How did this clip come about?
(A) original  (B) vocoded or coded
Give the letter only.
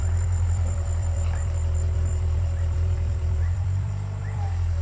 B